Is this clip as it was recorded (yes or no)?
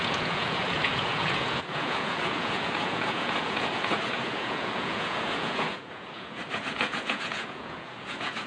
no